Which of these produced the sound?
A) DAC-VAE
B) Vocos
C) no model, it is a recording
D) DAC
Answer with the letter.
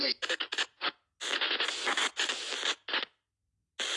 C